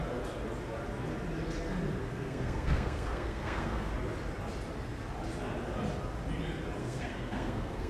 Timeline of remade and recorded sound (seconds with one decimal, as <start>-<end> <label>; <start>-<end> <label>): 0.0-2.0 recorded; 2.0-3.9 remade; 3.9-6.8 recorded; 6.8-7.9 remade